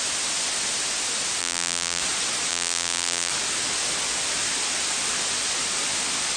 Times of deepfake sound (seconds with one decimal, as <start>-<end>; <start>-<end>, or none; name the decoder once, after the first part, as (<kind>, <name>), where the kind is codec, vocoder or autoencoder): 1.4-2.0 (vocoder, BigVGAN v2); 2.5-3.3